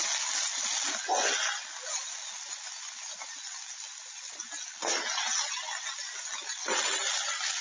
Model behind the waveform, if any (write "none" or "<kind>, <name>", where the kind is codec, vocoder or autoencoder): none